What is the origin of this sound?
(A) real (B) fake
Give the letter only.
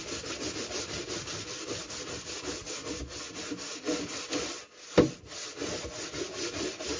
A